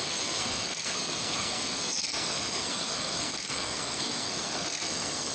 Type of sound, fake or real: fake